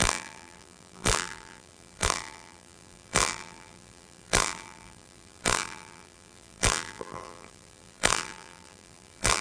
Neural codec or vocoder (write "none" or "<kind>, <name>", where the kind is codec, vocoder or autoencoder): vocoder, BigVGAN v2